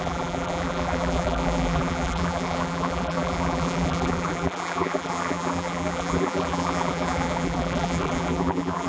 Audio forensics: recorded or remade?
remade